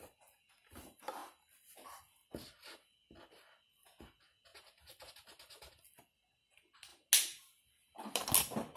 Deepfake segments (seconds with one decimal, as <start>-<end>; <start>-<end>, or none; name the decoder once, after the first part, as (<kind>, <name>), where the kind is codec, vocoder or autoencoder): none

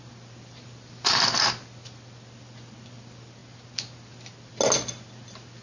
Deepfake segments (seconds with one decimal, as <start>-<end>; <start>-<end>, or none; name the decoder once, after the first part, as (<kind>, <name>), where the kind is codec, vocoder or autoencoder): none

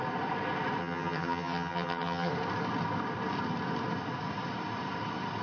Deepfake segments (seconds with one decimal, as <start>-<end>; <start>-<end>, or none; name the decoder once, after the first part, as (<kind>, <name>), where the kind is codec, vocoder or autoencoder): 0.8-2.3 (vocoder, HiFi-GAN)

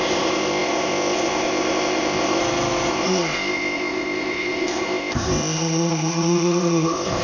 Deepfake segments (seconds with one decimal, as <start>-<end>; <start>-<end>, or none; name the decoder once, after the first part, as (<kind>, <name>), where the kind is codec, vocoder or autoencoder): 0.0-2.4 (codec, ZipCodec); 2.9-7.2

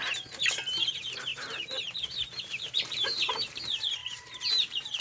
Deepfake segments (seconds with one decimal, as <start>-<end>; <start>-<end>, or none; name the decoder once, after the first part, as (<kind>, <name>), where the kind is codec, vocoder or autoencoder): 1.3-3.6 (vocoder, BigVGAN v2); 4.0-5.0